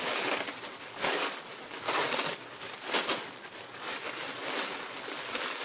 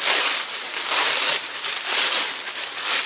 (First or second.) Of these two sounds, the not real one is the second